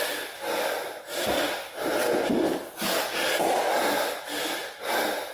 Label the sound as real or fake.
real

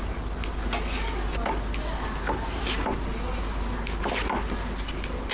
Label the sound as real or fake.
real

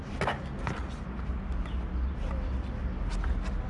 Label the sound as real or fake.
real